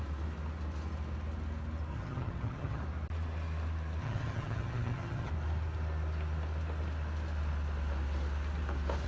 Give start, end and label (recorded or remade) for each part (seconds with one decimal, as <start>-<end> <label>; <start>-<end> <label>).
0.0-1.9 recorded; 1.9-2.8 remade; 2.8-4.0 recorded; 4.0-5.3 remade; 5.3-9.1 recorded